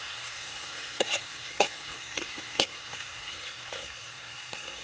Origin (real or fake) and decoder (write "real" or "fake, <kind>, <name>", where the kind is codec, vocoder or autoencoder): fake, codec, SNAC